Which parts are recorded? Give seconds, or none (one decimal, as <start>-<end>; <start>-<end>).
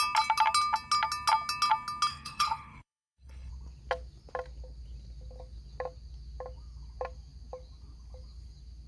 0.0-2.1; 3.5-8.9